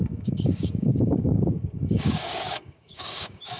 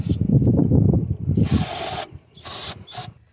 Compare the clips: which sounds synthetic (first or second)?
first